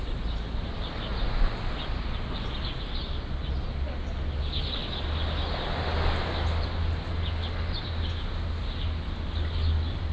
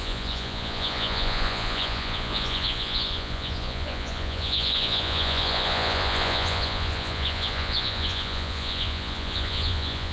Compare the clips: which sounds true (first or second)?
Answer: first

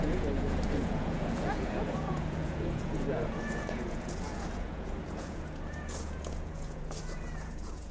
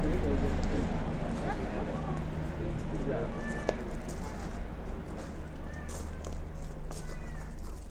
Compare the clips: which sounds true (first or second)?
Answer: second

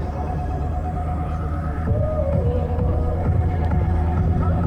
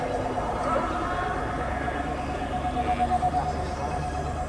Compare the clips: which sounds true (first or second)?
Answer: second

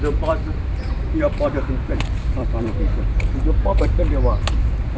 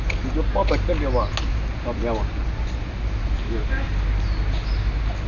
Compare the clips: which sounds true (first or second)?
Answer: second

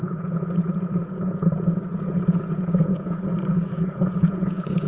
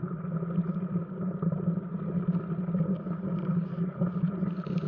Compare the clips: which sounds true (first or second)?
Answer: second